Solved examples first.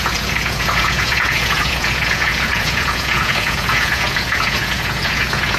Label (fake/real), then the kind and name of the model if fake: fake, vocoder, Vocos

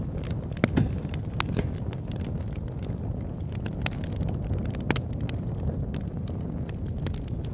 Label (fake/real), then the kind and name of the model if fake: real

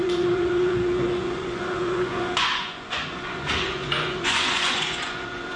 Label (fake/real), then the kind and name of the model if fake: fake, vocoder, Vocos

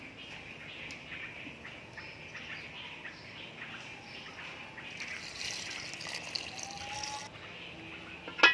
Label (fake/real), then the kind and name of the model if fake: real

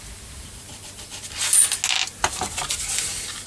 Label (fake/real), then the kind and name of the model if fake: real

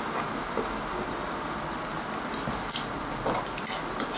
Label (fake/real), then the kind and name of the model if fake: real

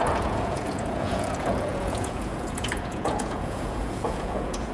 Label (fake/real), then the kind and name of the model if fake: fake, vocoder, Vocos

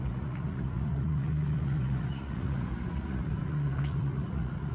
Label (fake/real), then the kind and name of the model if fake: fake, vocoder, Vocos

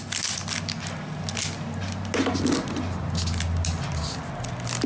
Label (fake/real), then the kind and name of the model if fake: real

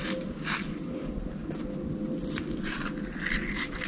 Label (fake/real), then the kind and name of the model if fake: real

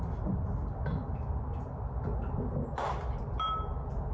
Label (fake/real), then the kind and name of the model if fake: real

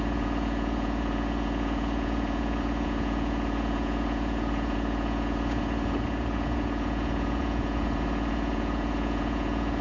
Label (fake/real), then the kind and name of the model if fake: fake, vocoder, Vocos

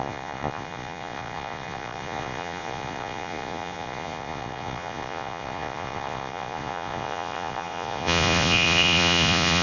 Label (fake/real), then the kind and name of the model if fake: fake, vocoder, Vocos